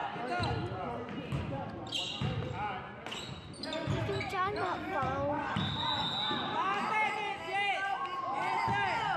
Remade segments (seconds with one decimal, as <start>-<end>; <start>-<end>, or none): none

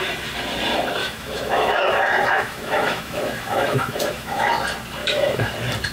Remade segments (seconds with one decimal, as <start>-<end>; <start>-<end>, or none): 1.0-4.5; 5.0-5.5

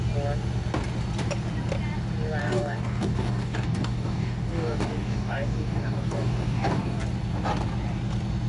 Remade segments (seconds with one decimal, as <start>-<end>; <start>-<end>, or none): 2.4-7.0

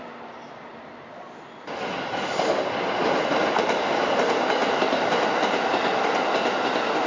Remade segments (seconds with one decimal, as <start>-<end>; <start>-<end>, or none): none

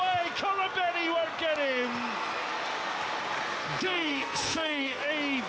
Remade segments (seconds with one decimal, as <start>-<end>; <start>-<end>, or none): 3.6-5.0

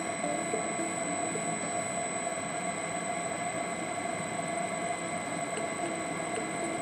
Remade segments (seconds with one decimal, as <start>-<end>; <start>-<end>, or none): 2.3-6.8

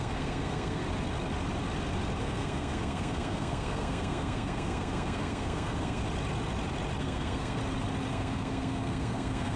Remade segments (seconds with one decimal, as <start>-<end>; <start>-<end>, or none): 0.0-0.8; 2.2-6.0; 7.0-7.6; 8.1-9.6